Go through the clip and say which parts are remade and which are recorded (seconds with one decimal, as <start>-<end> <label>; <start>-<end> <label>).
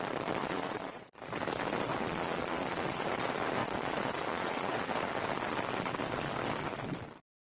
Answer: 0.0-0.4 recorded; 0.4-1.1 remade; 1.1-1.9 recorded; 1.9-3.1 remade; 3.1-3.6 recorded; 3.6-4.8 remade; 4.8-7.5 recorded